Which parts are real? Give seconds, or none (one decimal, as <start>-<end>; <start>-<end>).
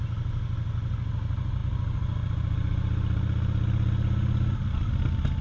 0.0-5.4